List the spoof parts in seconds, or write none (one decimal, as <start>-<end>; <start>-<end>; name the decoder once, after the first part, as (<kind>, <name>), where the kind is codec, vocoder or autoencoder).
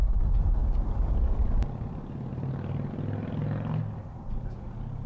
2.3-2.9 (vocoder, BigVGAN v2)